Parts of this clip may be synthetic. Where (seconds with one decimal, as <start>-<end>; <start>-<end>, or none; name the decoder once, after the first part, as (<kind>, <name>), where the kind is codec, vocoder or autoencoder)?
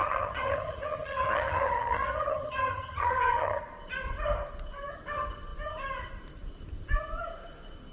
0.0-3.6 (vocoder, HiFi-GAN)